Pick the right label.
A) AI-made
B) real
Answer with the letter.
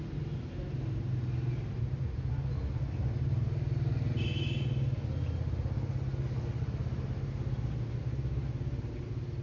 B